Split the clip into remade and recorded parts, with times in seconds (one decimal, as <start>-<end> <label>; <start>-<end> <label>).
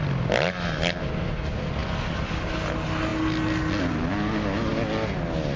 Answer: 0.0-5.6 recorded